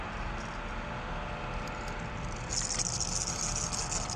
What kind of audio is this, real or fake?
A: real